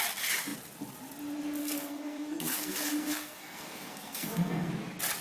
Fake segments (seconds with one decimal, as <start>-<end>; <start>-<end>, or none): 1.6-4.7